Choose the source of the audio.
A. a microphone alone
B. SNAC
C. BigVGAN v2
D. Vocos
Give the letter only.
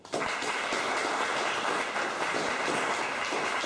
A